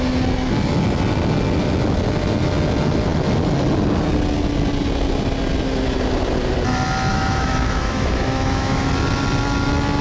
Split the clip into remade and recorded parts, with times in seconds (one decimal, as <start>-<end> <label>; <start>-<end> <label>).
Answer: 0.0-7.1 recorded; 7.1-8.9 remade; 8.9-10.0 recorded